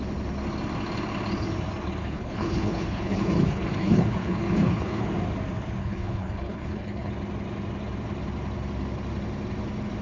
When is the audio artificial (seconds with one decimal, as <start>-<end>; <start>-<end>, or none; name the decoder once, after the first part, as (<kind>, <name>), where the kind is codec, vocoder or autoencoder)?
2.0-5.1 (codec, HILCodec); 5.8-7.1